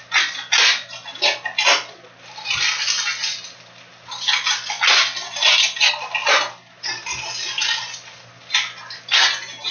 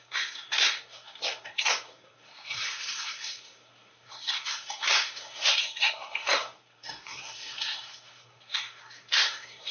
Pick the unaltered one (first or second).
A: first